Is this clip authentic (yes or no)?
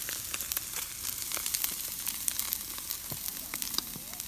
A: yes